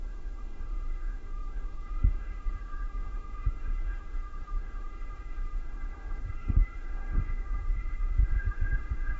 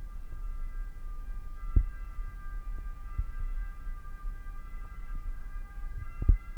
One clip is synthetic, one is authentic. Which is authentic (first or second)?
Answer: second